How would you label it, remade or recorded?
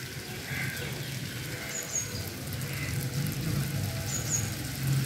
recorded